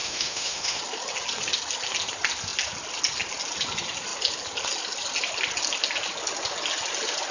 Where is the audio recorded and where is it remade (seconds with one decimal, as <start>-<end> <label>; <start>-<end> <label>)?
0.0-0.8 remade; 0.8-7.3 recorded